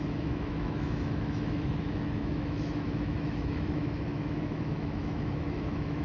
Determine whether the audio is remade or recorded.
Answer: remade